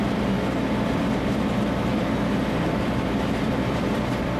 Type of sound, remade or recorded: remade